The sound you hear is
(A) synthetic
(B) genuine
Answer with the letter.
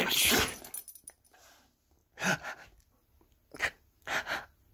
B